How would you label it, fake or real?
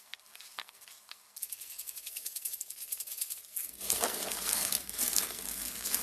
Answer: fake